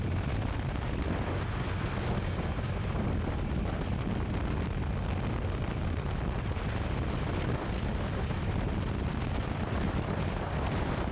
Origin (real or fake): real